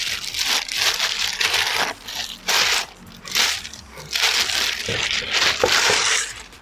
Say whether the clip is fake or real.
fake